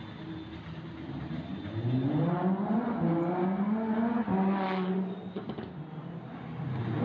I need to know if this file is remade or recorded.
recorded